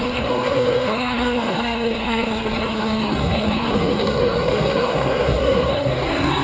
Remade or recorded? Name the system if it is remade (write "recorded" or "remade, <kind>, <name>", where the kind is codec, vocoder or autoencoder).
remade, codec, SNAC